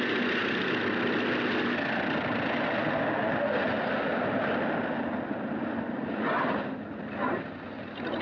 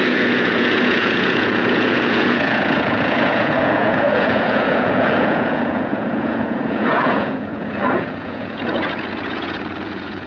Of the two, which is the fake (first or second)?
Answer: second